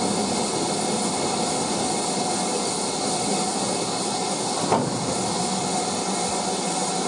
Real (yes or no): yes